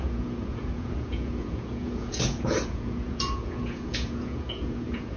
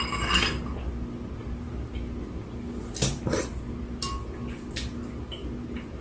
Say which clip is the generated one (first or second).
first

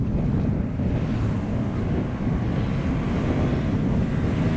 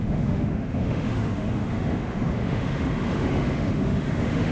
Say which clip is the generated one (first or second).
second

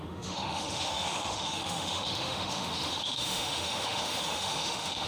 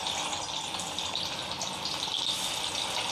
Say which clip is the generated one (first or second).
first